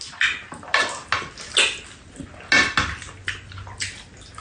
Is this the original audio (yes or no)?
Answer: yes